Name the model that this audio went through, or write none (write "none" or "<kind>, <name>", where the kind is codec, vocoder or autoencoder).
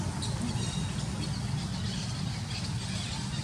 none